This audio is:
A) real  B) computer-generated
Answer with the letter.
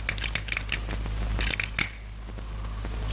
A